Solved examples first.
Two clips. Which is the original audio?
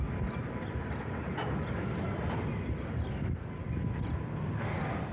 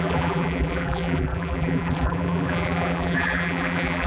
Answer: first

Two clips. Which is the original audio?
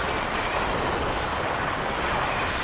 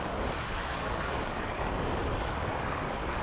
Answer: first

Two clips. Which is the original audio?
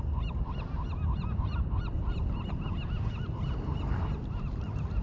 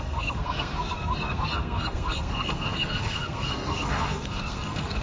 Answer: first